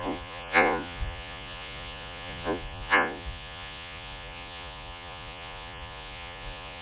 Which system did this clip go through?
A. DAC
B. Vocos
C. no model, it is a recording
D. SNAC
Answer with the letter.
B